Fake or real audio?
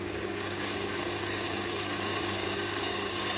fake